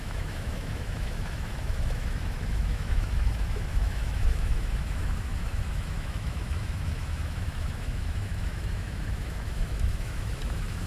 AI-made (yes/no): yes